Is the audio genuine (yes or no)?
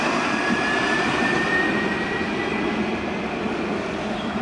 no